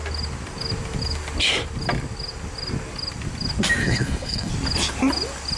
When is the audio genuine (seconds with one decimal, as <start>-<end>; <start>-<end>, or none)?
0.0-3.8; 4.5-5.6